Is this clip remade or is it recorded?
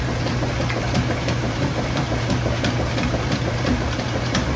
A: remade